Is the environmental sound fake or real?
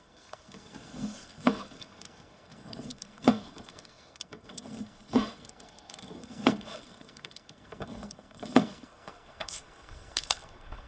fake